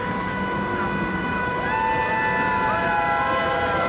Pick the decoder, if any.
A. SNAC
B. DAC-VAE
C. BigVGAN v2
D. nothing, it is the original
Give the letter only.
D